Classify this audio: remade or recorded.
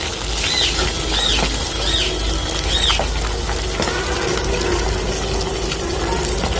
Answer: recorded